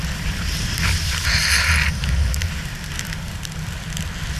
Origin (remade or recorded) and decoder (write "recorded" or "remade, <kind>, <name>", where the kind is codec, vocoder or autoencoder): recorded